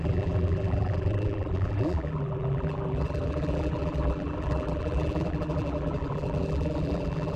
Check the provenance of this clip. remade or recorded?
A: remade